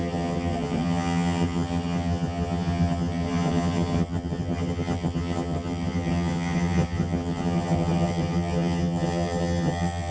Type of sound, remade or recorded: remade